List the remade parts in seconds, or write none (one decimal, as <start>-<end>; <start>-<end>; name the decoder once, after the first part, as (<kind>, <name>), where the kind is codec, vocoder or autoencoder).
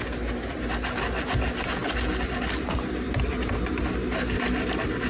none